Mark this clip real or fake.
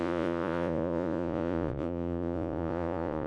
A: fake